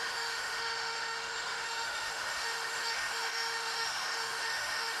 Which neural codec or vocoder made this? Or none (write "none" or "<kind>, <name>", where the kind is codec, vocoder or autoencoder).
autoencoder, DAC-VAE